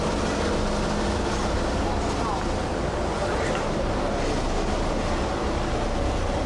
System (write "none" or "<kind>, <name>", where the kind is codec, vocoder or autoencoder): none